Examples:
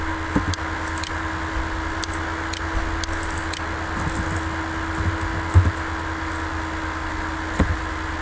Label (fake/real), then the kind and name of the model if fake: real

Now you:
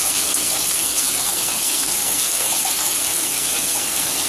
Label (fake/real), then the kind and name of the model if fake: fake, codec, SNAC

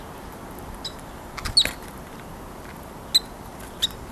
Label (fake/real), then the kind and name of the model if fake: real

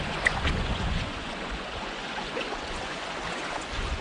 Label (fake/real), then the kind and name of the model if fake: fake, vocoder, Vocos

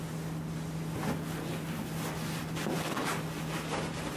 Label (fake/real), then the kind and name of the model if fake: real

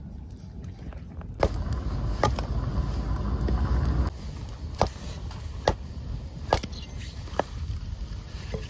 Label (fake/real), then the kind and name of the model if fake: real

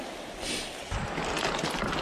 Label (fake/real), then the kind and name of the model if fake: real